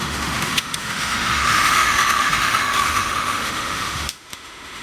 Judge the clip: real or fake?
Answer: fake